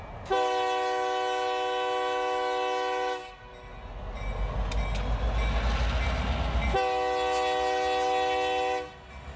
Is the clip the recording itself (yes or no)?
yes